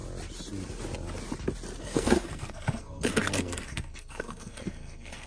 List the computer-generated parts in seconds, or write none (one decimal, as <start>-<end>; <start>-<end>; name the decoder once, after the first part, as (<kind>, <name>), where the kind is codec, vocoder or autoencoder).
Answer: 1.8-5.3 (codec, SNAC)